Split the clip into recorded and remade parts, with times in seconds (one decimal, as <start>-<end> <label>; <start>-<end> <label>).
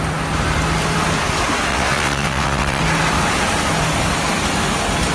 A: 0.0-1.7 recorded; 1.7-2.8 remade; 2.8-5.1 recorded